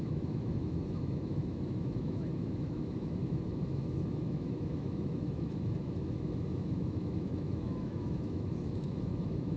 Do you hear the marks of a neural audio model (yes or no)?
yes